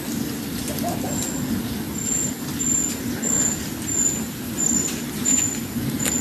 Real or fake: real